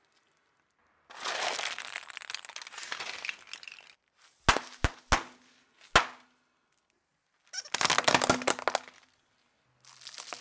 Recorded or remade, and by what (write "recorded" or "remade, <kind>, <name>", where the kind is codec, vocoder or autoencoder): recorded